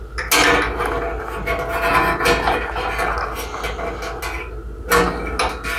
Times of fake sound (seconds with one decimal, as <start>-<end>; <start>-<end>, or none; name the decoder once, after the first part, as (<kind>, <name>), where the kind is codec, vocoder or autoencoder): none